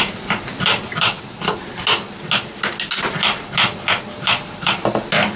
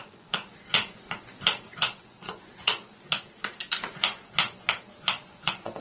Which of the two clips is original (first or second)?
first